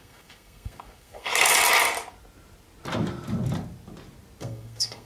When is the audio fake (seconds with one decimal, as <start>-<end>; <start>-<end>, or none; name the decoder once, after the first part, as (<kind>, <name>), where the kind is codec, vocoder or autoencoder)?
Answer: 0.0-1.3 (codec, SNAC); 4.4-5.1

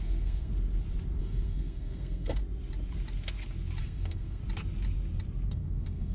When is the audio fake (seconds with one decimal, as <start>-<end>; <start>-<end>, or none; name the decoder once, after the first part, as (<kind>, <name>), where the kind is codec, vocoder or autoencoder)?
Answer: 0.0-0.5 (codec, SNAC); 1.2-2.4; 3.8-4.4; 5.5-6.1

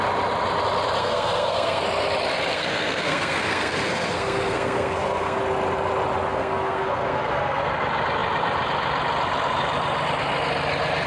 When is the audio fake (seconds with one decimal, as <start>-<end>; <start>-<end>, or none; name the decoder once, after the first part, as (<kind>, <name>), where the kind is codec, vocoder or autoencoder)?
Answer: 1.0-1.8 (codec, SNAC); 2.5-5.4; 6.3-7.7

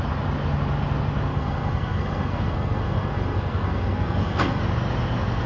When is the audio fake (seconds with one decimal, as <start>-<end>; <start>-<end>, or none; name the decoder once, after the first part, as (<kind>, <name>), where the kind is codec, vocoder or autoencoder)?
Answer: 1.3-4.6 (codec, SNAC)

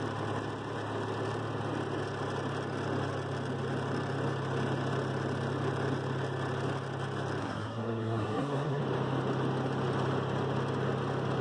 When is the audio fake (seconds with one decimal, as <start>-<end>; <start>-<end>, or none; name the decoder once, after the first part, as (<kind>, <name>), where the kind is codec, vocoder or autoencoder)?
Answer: 7.4-8.8 (codec, SNAC)

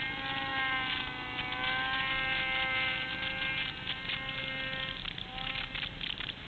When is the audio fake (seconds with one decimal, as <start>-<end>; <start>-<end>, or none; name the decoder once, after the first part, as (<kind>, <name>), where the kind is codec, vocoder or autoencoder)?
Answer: none

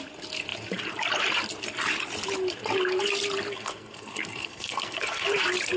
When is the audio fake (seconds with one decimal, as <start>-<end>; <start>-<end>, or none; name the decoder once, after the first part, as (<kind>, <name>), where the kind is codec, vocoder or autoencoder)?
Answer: 3.5-5.3 (codec, SNAC)

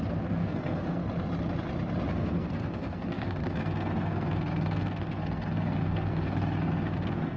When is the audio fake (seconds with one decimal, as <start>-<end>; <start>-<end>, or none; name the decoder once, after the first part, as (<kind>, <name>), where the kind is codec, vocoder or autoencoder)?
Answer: 0.0-1.0 (codec, SNAC); 2.1-7.4